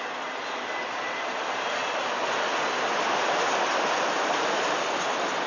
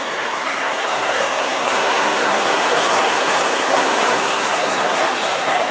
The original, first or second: first